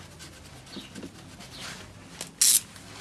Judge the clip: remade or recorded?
recorded